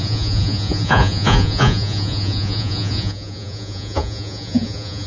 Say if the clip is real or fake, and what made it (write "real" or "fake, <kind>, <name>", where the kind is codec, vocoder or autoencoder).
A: fake, vocoder, Vocos